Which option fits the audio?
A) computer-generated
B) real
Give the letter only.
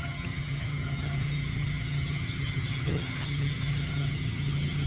A